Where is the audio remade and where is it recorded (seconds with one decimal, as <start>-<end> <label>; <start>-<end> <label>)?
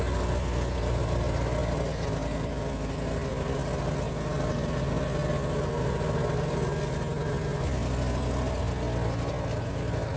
0.0-10.2 recorded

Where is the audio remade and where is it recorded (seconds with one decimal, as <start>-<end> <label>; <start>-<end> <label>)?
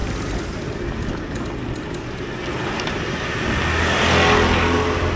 0.0-5.2 recorded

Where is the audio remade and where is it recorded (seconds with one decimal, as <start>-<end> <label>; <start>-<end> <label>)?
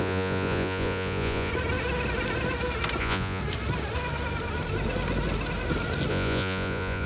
0.0-1.5 remade; 1.5-3.0 recorded; 3.0-3.4 remade; 3.4-6.1 recorded; 6.1-7.1 remade